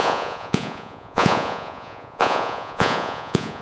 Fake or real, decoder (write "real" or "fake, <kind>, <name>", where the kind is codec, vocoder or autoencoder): fake, vocoder, Vocos